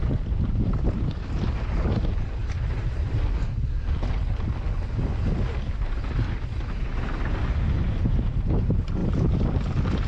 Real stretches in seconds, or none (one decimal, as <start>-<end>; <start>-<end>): 0.0-10.1